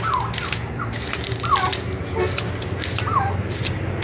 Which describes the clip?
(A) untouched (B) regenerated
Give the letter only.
A